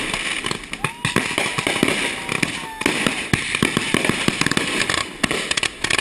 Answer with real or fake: real